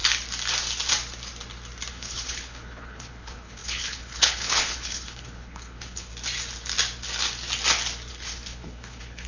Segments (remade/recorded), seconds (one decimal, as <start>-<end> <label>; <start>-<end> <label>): 0.0-1.9 recorded; 1.9-6.1 remade; 6.1-8.1 recorded; 8.1-9.3 remade